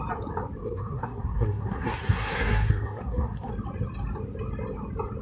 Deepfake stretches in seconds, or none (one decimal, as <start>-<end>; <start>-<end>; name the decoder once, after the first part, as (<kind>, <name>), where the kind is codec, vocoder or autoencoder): 0.6-3.5 (codec, SNAC)